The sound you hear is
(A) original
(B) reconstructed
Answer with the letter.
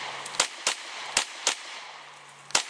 A